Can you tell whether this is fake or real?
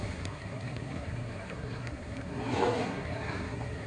fake